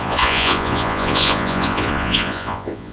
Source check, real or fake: fake